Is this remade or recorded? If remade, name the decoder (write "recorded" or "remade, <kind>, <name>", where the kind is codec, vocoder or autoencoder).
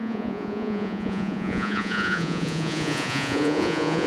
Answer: remade, vocoder, Vocos